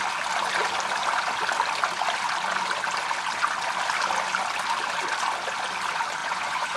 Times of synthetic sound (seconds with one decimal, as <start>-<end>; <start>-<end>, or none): 6.2-6.8